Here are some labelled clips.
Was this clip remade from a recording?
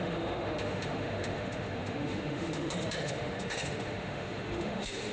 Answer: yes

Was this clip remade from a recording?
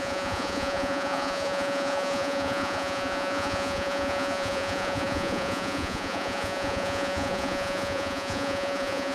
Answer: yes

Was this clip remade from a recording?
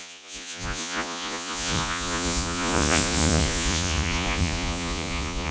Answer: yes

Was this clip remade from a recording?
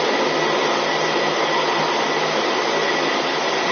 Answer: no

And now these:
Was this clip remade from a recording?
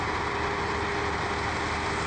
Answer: no